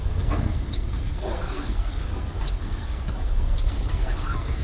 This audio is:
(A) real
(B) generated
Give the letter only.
B